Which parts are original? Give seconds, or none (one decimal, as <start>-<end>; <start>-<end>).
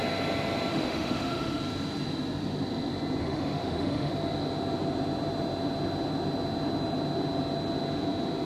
0.0-0.7; 1.6-3.2; 4.1-8.4